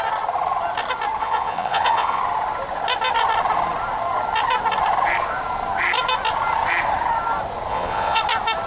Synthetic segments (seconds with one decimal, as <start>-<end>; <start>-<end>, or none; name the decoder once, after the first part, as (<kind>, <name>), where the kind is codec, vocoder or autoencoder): 1.2-2.2 (vocoder, Vocos); 7.7-8.2